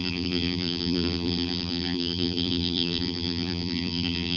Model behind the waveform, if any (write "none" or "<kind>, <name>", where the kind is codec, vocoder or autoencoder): vocoder, BigVGAN v2